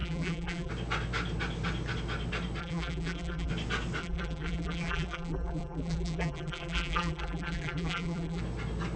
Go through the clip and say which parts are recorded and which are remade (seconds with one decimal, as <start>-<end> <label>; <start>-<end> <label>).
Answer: 0.0-0.7 remade; 0.7-2.6 recorded; 2.6-3.5 remade; 3.5-4.0 recorded; 4.0-8.4 remade; 8.4-9.0 recorded